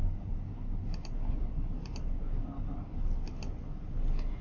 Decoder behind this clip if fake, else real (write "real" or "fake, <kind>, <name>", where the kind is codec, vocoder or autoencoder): real